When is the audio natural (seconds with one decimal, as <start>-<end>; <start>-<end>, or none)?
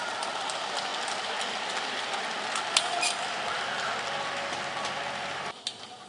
0.0-6.1